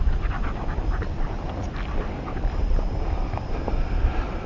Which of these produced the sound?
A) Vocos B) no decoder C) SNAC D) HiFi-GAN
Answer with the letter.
B